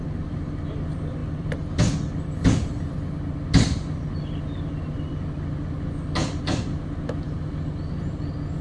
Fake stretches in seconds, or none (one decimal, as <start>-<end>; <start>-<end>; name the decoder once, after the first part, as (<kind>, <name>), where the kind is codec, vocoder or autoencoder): none